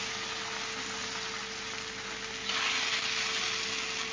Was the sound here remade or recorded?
recorded